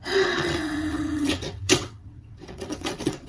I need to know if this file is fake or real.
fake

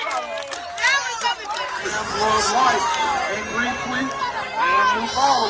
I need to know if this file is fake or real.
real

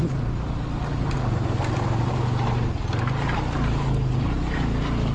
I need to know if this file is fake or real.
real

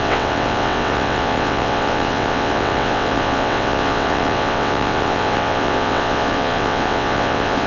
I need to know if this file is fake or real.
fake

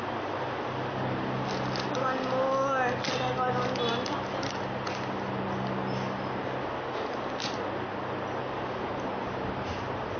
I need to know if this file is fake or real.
real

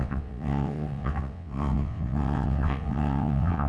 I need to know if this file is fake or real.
fake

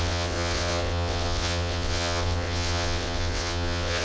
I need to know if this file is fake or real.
fake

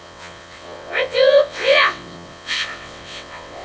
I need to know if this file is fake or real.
fake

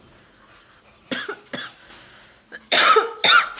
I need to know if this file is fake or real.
real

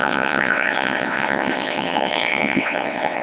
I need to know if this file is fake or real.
fake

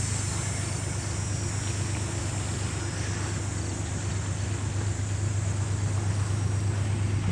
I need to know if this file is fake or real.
real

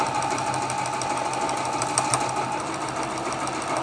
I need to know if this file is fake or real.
real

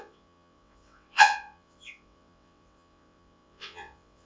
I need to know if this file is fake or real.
fake